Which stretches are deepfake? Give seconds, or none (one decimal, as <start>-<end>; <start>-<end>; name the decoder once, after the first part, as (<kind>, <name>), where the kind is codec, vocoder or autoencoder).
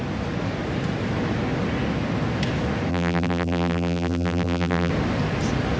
2.9-4.9 (vocoder, BigVGAN v2)